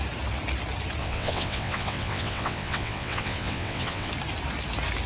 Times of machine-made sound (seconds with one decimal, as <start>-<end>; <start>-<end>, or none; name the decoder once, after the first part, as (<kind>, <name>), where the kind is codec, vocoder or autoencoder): 1.0-4.1 (vocoder, WaveNeXt)